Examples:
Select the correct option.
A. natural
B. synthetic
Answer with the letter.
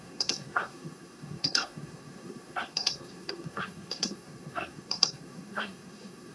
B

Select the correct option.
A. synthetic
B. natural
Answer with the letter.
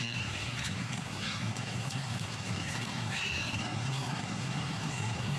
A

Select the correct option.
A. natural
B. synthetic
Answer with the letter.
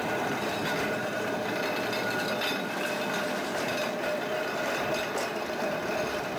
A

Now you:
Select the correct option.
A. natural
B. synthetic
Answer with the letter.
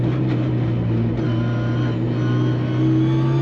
A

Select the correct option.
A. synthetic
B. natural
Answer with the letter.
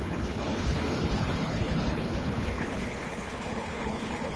A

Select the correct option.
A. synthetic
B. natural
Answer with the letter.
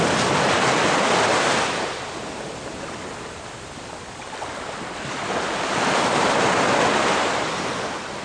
B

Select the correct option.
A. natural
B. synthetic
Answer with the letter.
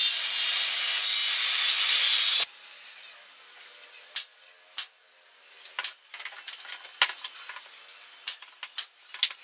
A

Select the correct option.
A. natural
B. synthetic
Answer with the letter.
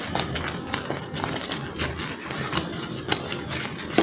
A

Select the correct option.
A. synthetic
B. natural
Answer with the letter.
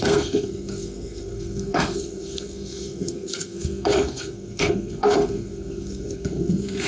A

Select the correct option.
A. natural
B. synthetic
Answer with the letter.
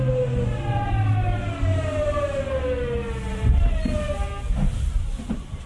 A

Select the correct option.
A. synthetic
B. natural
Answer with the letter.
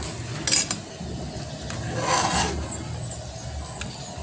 B